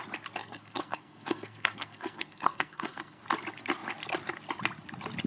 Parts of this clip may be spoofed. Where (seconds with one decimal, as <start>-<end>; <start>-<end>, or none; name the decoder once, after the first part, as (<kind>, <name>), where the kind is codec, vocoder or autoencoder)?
0.4-3.2 (codec, SNAC)